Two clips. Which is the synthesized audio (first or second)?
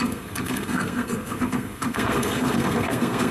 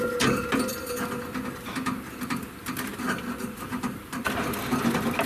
first